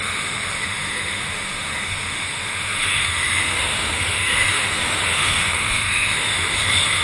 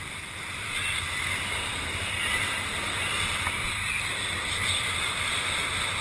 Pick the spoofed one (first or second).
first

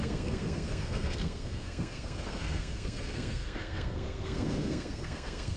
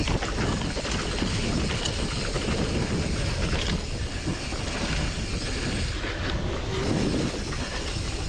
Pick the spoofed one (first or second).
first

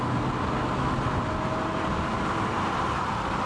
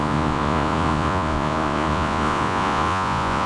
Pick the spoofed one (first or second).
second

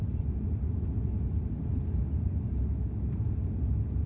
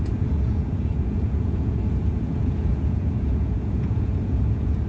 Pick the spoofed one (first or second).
second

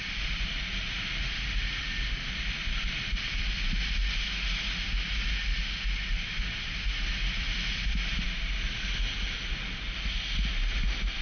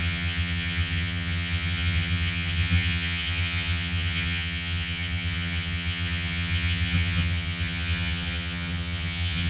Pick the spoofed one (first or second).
second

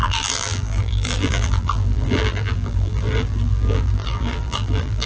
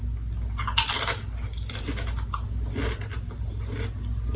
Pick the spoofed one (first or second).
first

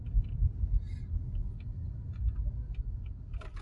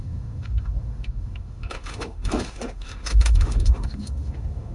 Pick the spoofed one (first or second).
second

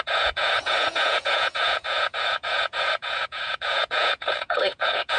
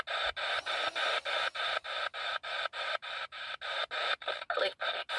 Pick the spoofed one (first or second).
first